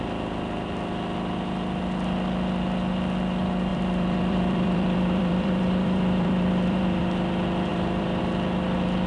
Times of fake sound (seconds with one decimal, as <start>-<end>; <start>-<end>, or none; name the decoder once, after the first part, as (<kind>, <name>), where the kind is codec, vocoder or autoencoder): 3.7-7.0 (vocoder, BigVGAN v2); 7.7-8.2